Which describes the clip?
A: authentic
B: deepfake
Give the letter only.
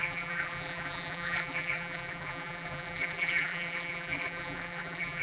B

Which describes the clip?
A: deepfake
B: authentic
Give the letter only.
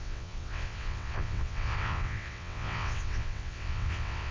A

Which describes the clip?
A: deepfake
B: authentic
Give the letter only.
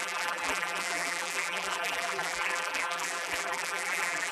A